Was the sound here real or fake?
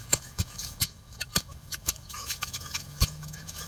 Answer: fake